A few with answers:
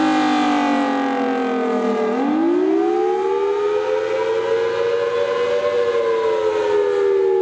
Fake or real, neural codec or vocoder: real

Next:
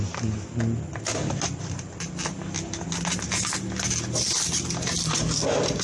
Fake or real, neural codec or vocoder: real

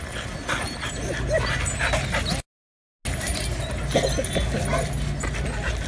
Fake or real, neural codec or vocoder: real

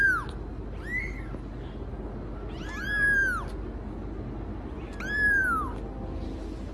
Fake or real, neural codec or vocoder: real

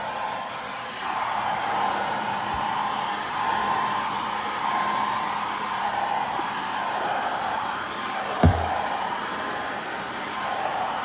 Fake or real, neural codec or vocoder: fake, vocoder, BigVGAN v2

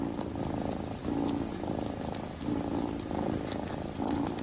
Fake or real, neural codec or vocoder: real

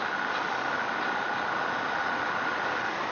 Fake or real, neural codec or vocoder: real